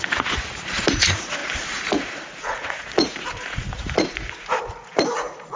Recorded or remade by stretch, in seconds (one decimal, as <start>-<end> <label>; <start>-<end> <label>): 0.0-5.6 remade